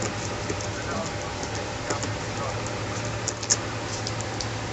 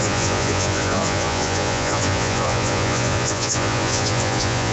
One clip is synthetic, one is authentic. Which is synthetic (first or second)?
second